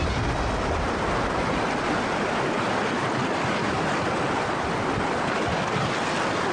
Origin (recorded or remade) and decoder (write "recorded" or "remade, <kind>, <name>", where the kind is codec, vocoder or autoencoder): recorded